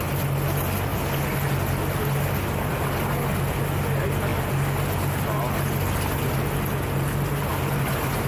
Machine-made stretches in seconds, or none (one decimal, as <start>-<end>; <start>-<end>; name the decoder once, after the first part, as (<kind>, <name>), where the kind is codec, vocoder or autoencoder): 7.5-8.3 (vocoder, BigVGAN v2)